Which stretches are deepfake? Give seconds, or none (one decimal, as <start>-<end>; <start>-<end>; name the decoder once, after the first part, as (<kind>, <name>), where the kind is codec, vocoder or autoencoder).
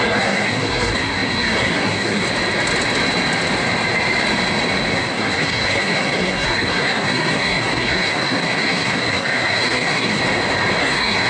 0.0-2.2 (codec, SNAC); 4.9-10.2; 10.8-11.3